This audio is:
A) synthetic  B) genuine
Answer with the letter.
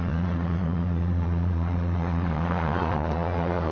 A